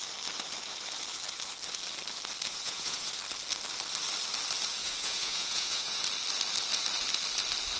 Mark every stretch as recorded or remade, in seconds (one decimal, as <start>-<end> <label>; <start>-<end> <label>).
0.0-2.5 recorded; 2.5-3.1 remade; 3.1-4.8 recorded; 4.8-6.0 remade; 6.0-7.8 recorded

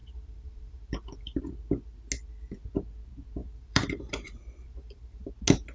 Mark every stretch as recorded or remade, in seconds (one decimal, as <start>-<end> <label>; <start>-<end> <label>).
0.0-1.4 remade; 1.4-3.4 recorded; 3.4-5.3 remade; 5.3-5.7 recorded

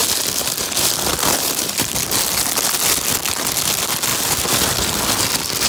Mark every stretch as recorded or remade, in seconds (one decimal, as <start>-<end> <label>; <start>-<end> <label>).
0.0-1.9 remade; 1.9-5.7 recorded

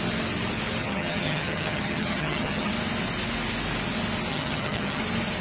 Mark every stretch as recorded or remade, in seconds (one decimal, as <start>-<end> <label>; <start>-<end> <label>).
0.0-0.8 recorded; 0.8-2.7 remade; 2.7-4.3 recorded; 4.3-5.0 remade; 5.0-5.4 recorded

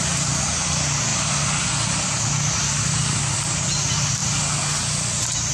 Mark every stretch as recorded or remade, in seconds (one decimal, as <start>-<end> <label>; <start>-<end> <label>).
0.0-5.5 recorded